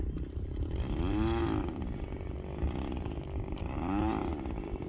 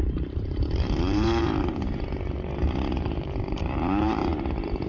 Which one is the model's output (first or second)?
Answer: second